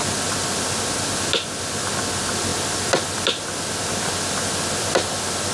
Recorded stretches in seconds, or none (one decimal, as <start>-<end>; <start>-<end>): 0.0-5.5